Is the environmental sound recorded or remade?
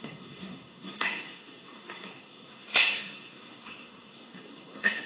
remade